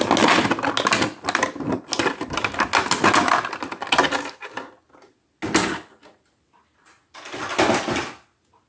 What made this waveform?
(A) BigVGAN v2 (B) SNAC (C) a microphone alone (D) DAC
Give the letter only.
C